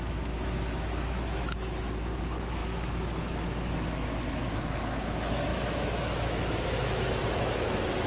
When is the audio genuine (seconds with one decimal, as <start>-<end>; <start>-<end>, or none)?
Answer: none